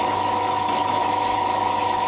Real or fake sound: fake